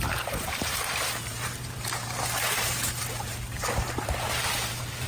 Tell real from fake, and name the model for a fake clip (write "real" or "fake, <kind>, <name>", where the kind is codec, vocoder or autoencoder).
fake, vocoder, BigVGAN v2